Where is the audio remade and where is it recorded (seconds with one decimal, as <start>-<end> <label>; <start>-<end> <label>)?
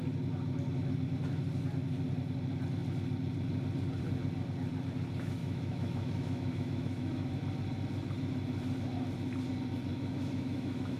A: 0.0-5.4 recorded; 5.4-7.3 remade; 7.3-9.9 recorded; 9.9-11.0 remade